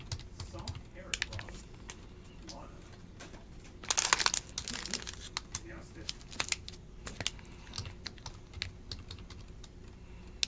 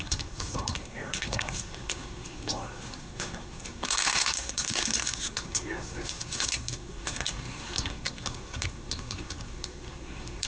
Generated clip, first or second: second